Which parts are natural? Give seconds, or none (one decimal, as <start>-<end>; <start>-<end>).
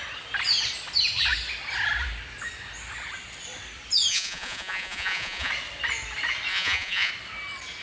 0.0-4.1; 5.5-6.5; 7.1-7.8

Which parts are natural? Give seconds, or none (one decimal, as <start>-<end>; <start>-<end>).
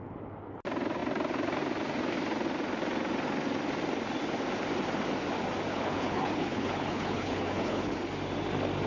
0.0-5.7; 8.1-8.9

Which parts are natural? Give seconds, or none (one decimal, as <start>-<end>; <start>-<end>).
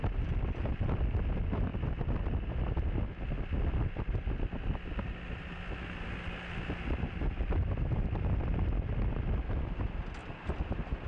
0.0-11.1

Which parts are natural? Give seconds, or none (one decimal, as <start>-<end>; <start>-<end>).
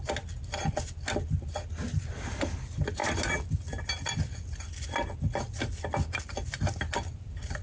0.0-7.6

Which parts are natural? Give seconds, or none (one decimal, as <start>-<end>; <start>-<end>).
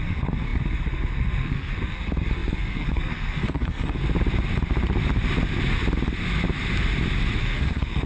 4.0-7.4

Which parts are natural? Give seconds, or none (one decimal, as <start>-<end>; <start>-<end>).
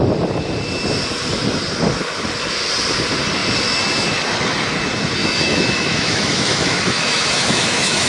0.0-5.2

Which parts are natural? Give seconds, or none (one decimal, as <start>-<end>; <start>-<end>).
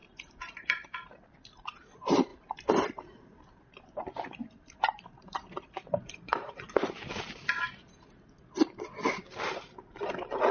1.3-2.3; 6.7-10.5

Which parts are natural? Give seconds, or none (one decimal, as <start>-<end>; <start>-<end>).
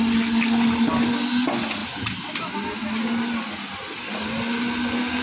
0.0-5.2